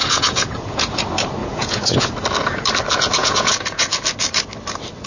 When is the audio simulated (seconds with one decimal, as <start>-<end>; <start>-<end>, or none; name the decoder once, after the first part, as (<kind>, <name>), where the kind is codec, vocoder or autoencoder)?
0.0-1.0 (vocoder, Vocos); 1.4-2.1; 3.2-3.9